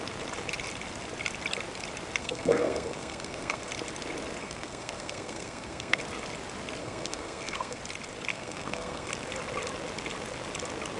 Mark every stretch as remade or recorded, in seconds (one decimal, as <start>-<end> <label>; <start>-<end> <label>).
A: 0.0-2.2 recorded; 2.2-3.7 remade; 3.7-4.4 recorded; 4.4-6.0 remade; 6.0-6.8 recorded; 6.8-7.8 remade; 7.8-8.3 recorded; 8.3-9.1 remade; 9.1-11.0 recorded